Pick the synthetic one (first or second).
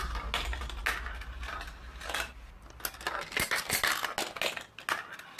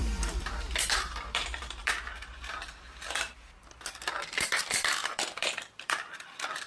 second